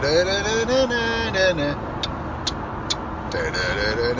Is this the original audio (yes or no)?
yes